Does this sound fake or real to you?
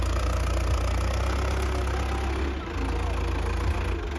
real